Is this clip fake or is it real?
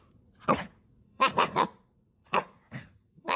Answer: fake